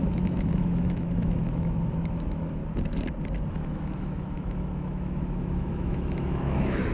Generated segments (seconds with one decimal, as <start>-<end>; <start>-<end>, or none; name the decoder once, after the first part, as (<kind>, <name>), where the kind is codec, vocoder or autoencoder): 0.0-2.6 (autoencoder, DAC-VAE); 3.5-6.9